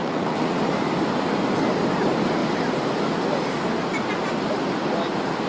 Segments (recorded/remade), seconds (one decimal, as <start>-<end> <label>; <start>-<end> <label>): 0.0-0.6 remade; 0.6-5.5 recorded